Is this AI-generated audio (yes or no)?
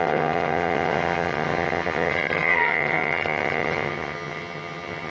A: yes